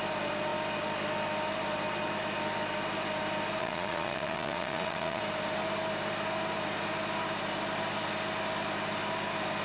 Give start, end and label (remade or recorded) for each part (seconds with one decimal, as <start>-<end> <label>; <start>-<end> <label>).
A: 0.0-3.6 recorded; 3.6-5.2 remade; 5.2-9.6 recorded